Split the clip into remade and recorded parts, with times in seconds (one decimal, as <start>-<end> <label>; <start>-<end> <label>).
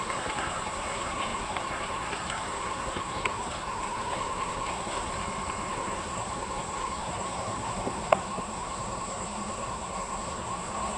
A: 0.0-5.1 remade; 5.1-5.7 recorded; 5.7-11.0 remade